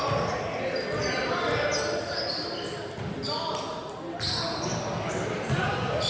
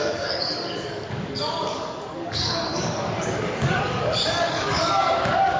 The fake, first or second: second